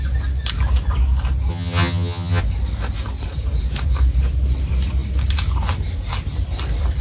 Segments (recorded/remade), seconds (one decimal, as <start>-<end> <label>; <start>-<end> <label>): 0.0-1.5 recorded; 1.5-2.4 remade; 2.4-7.0 recorded